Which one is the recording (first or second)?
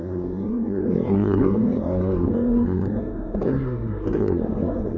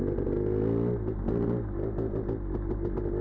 second